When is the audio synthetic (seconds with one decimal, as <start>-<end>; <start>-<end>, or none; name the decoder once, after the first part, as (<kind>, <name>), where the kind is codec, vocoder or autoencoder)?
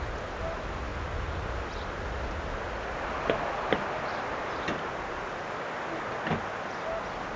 none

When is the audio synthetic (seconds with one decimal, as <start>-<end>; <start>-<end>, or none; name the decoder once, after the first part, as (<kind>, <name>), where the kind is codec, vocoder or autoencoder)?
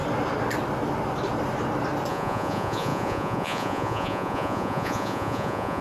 2.1-5.8 (vocoder, Vocos)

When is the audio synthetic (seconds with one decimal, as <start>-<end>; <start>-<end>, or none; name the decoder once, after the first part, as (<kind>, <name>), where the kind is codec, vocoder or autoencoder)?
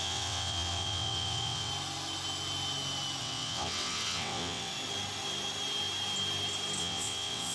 0.0-1.7 (vocoder, WaveNeXt); 3.2-4.7; 6.8-7.5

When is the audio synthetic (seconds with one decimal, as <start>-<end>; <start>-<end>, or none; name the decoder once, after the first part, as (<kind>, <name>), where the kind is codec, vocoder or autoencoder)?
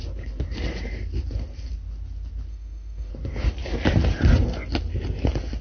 2.5-3.1 (autoencoder, DAC-VAE)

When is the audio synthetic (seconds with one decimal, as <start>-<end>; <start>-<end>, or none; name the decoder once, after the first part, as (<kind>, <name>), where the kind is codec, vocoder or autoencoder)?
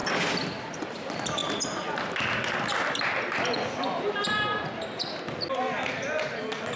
none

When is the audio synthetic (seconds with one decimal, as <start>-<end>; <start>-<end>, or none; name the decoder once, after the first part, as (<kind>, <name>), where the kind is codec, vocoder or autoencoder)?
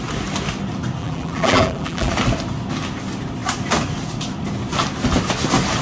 1.0-2.1 (vocoder, BigVGAN v2)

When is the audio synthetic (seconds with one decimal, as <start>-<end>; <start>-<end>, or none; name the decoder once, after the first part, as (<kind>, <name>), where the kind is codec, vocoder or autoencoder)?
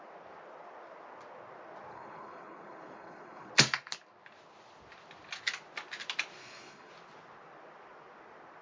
1.9-3.5 (codec, HILCodec); 6.4-6.9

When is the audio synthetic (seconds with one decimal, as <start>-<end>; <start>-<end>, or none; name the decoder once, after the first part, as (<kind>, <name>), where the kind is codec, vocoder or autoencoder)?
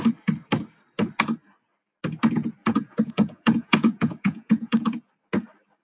2.6-5.1 (vocoder, Vocos)